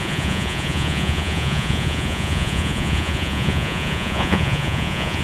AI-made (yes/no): yes